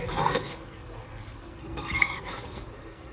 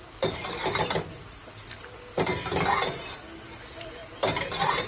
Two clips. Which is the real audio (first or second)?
second